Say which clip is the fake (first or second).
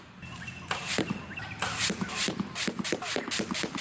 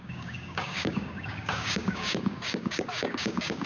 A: second